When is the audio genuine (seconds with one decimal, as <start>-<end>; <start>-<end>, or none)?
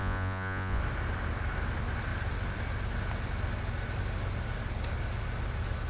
0.8-5.9